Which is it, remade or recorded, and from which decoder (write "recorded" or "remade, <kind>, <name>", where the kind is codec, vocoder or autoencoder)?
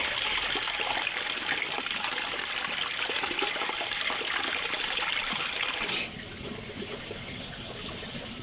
recorded